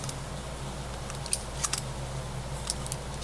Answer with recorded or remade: recorded